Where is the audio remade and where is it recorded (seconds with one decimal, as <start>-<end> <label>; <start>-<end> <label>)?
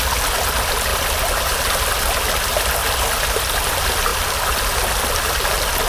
0.0-5.9 recorded